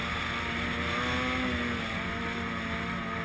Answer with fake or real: real